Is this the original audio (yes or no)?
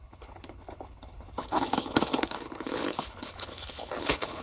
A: no